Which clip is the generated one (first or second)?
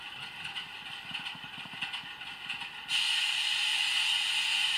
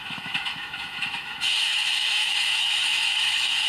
second